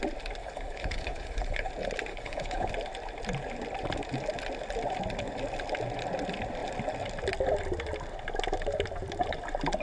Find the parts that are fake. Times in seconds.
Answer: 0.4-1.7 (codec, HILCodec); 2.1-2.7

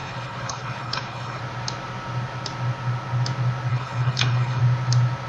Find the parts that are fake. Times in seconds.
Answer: 0.0-1.4 (codec, HILCodec); 3.7-4.6

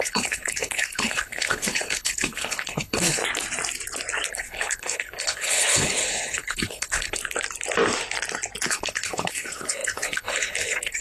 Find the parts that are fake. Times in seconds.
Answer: 0.0-3.2 (codec, HILCodec); 4.3-7.2; 8.7-11.0